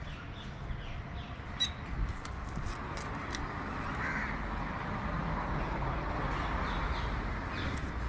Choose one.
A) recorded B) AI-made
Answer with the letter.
A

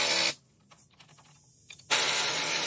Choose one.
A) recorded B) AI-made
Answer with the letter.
A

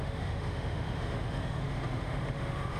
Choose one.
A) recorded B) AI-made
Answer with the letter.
B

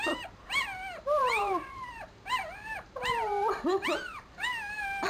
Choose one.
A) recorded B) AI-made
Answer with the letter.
B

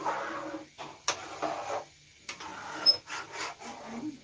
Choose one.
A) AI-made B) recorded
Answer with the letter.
B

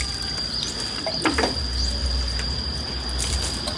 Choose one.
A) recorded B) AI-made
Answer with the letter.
A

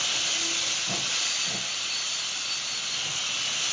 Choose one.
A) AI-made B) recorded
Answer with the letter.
B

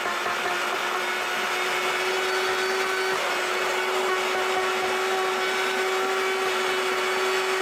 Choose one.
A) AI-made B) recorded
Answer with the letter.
B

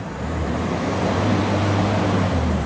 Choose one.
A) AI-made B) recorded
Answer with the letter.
A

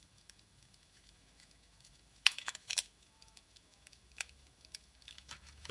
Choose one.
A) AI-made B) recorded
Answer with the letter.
A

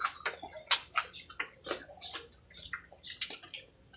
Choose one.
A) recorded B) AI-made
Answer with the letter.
A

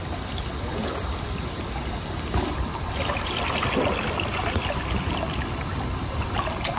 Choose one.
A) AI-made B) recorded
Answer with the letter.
B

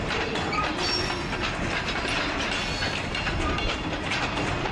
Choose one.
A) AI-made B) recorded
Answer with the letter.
B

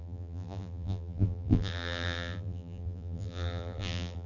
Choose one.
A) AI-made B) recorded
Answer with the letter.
A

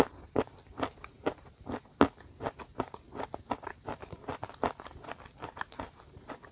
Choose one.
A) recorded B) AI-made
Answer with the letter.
A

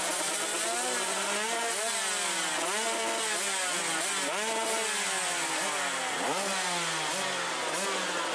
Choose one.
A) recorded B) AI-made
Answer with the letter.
A